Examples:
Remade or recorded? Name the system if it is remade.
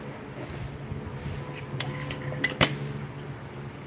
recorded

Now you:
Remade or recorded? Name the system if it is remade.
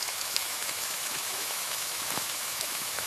remade, autoencoder, DAC-VAE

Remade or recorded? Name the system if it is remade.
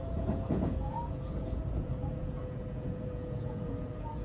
remade, vocoder, Vocos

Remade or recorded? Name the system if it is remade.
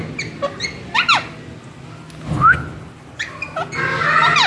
recorded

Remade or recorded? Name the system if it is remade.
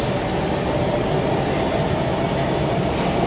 recorded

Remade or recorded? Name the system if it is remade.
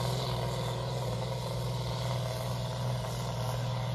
recorded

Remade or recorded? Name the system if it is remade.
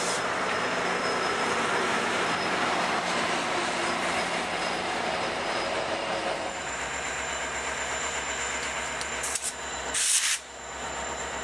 remade, vocoder, BigVGAN v2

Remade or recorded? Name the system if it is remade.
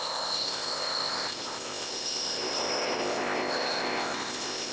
remade, codec, ZipCodec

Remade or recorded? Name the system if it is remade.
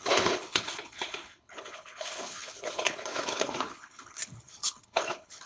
remade, codec, HILCodec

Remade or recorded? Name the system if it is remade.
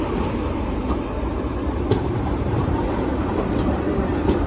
remade, vocoder, BigVGAN v2